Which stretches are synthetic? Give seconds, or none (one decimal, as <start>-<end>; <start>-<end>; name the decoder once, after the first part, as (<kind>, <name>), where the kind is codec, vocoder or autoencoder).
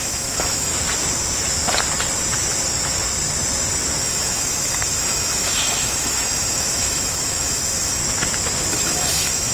0.0-0.7 (autoencoder, DAC-VAE); 4.0-8.0; 8.7-9.5